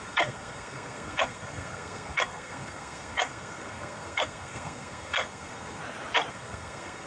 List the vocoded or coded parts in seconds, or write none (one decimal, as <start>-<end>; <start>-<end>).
0.0-5.8; 6.3-7.1